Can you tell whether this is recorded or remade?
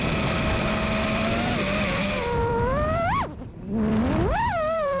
remade